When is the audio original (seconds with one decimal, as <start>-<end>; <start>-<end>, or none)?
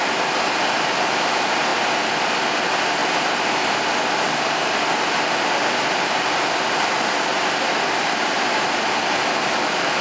0.0-10.0